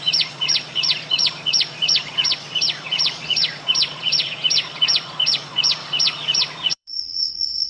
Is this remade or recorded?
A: remade